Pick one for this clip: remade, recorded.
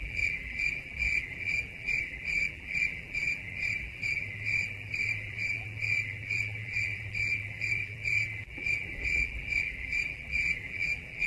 remade